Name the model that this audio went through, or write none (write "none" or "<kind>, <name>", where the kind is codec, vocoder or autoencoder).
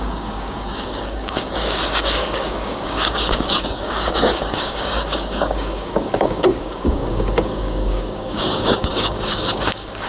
codec, DAC